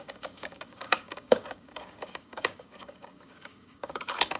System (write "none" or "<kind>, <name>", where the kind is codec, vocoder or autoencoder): codec, DAC